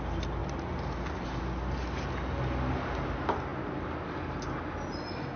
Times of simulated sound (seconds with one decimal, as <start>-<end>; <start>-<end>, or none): 0.4-1.4